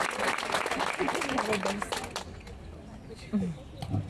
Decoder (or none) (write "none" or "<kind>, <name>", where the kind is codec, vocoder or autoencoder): none